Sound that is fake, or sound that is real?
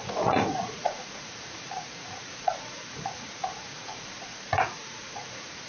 fake